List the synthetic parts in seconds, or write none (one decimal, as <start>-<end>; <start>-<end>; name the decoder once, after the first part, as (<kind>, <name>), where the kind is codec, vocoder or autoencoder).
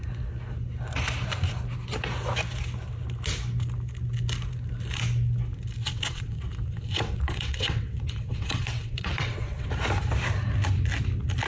5.8-9.7 (vocoder, WaveNeXt)